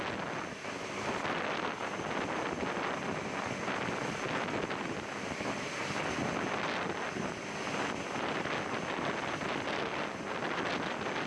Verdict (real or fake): real